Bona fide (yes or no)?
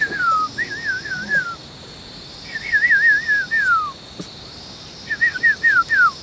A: yes